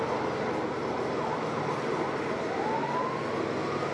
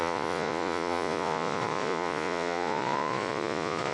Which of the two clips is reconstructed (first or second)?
second